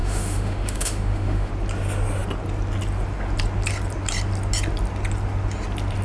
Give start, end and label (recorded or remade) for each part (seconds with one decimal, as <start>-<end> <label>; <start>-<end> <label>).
0.0-1.5 remade; 1.5-6.0 recorded

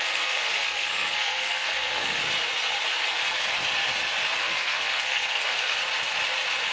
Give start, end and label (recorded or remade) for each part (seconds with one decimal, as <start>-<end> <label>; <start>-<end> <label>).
0.0-2.2 remade; 2.2-4.4 recorded; 4.4-5.8 remade; 5.8-6.7 recorded

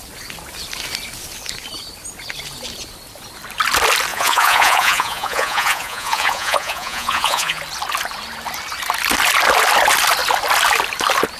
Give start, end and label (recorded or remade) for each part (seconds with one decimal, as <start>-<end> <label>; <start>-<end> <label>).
0.0-4.1 recorded; 4.1-7.6 remade; 7.6-11.4 recorded

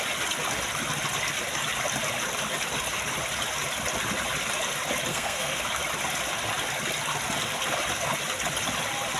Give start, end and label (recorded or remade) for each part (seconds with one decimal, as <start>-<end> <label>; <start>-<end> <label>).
0.0-5.1 recorded; 5.1-5.6 remade; 5.6-9.2 recorded

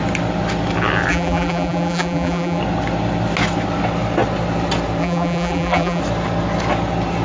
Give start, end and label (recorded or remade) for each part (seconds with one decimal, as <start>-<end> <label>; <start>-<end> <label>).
0.0-1.1 recorded; 1.1-2.6 remade; 2.6-5.0 recorded; 5.0-6.0 remade; 6.0-7.2 recorded

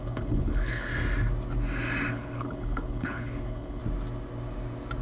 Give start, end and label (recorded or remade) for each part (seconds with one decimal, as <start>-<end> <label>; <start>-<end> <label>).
0.0-0.9 remade; 0.9-2.1 recorded; 2.1-3.8 remade; 3.8-5.0 recorded

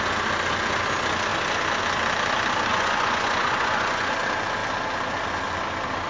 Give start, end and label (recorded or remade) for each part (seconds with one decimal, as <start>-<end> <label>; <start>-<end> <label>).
0.0-2.7 recorded; 2.7-4.1 remade; 4.1-6.1 recorded